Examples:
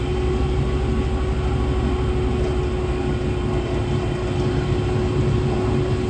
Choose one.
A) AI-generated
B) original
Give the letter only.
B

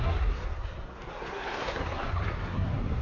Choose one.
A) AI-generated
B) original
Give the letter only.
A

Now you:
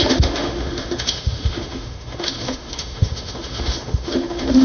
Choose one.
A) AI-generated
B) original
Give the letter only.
A